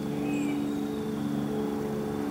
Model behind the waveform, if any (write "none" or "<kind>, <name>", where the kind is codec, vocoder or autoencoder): none